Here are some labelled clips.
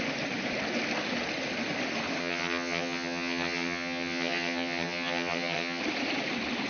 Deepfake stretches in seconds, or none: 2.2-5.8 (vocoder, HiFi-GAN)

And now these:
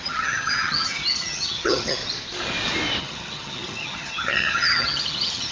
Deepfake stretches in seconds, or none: 0.0-2.0 (vocoder, HiFi-GAN); 3.0-5.5

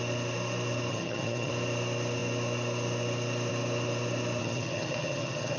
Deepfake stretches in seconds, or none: 0.9-1.5 (vocoder, HiFi-GAN); 4.4-5.6

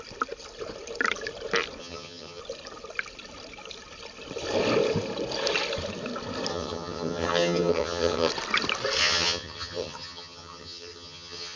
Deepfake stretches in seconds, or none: 1.8-2.4 (vocoder, HiFi-GAN); 6.5-8.3; 9.0-11.6

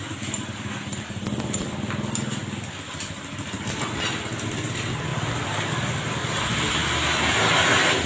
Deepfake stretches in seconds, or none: none

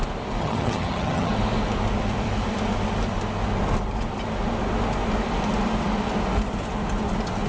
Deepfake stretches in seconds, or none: 0.4-1.3 (vocoder, HiFi-GAN)